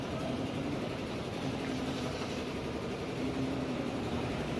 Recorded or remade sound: remade